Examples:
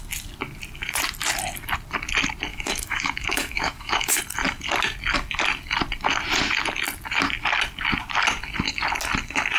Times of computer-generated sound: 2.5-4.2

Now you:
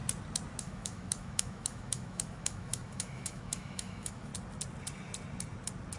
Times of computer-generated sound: 0.6-4.3

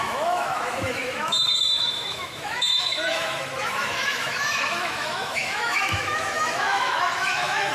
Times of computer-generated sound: 0.0-7.7

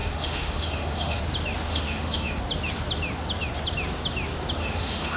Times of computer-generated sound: 0.0-1.2; 1.7-2.4; 4.6-5.2